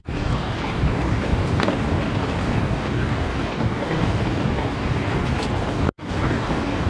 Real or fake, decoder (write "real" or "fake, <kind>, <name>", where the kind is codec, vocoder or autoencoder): fake, codec, DAC